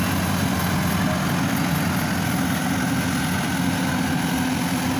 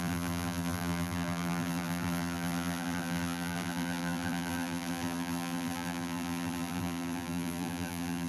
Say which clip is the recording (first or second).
first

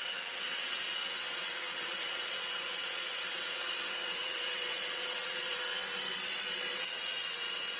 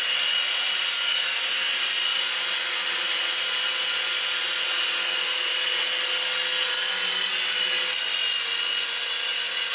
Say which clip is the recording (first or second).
second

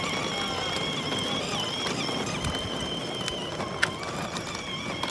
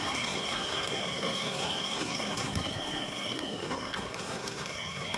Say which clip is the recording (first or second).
first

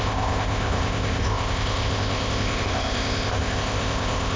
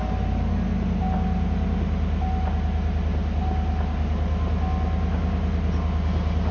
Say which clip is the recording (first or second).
second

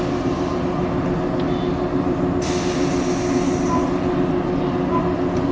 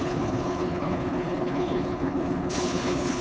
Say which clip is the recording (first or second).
first